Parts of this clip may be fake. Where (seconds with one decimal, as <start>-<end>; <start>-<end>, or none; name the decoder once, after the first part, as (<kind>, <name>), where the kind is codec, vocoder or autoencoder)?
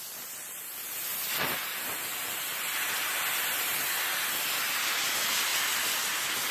none